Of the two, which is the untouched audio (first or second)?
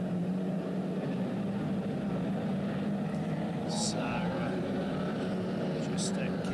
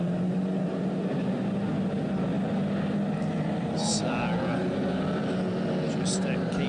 second